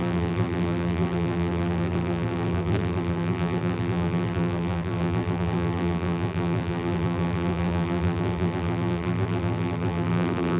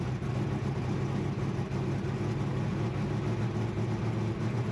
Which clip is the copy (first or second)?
first